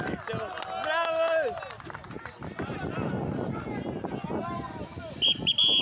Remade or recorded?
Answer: recorded